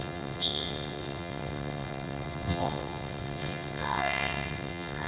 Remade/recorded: remade